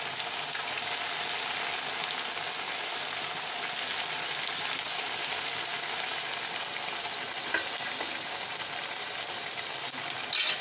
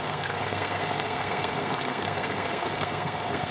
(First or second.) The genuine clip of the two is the first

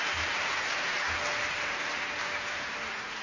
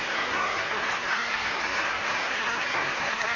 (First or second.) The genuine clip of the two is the first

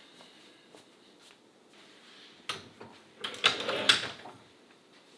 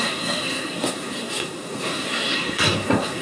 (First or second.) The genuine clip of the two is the first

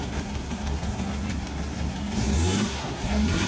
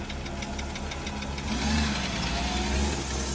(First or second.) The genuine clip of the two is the second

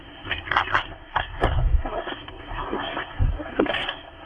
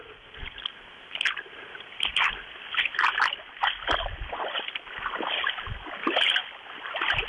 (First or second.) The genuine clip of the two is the second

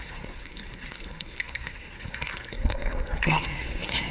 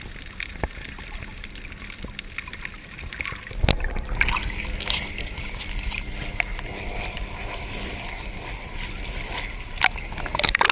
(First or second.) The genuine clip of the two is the second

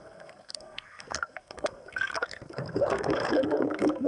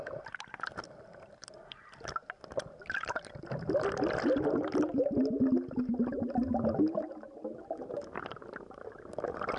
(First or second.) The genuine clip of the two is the second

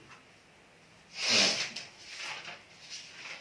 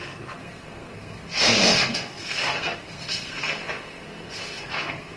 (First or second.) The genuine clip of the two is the first